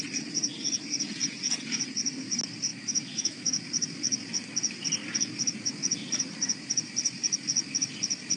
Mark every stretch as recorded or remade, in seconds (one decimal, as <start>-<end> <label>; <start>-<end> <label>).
0.0-2.7 recorded; 2.7-3.6 remade; 3.6-8.4 recorded